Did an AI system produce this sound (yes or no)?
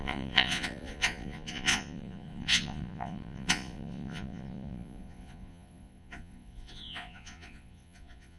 yes